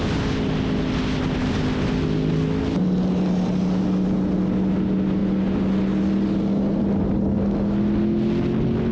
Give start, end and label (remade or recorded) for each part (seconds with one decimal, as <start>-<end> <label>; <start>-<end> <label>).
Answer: 0.0-8.9 recorded